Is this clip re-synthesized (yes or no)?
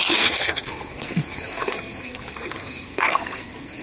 yes